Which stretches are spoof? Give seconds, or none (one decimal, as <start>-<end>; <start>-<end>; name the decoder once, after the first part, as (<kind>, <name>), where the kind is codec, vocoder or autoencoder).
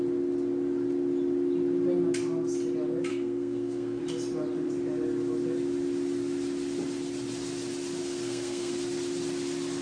3.1-4.0 (codec, SNAC); 8.0-8.7